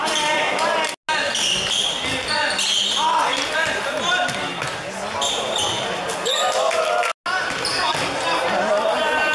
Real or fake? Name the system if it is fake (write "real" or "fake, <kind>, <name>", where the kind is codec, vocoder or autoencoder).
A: real